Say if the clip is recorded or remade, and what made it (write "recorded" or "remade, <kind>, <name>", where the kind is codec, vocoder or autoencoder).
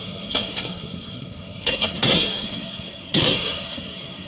remade, codec, SNAC